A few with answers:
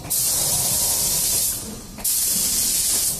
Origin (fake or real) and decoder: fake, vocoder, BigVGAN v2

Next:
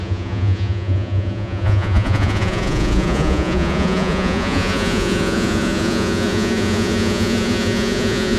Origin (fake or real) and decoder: fake, vocoder, Vocos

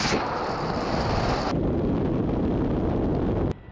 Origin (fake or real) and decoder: real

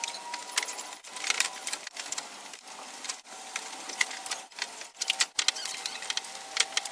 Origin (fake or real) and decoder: real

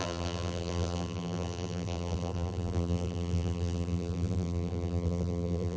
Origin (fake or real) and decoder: fake, vocoder, BigVGAN v2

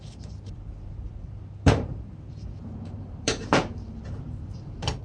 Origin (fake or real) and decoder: fake, vocoder, BigVGAN v2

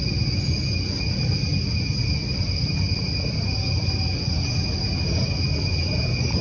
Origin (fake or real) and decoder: real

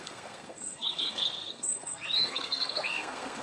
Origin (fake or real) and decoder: fake, codec, SNAC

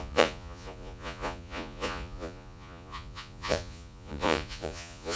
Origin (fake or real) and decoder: fake, vocoder, Vocos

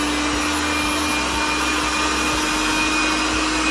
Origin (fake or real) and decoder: real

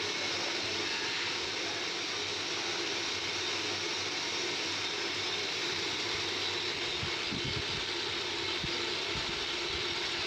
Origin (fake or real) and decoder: real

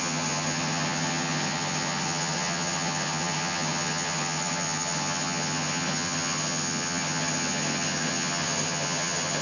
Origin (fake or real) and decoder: fake, vocoder, HiFi-GAN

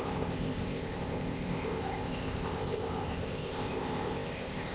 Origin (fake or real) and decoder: fake, codec, ZipCodec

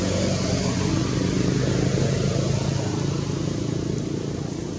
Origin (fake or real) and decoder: real